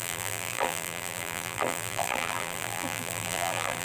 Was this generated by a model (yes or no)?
yes